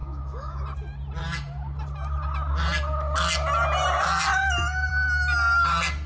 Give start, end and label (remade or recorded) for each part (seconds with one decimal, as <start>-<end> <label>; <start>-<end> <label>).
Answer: 0.0-0.6 remade; 0.6-6.1 recorded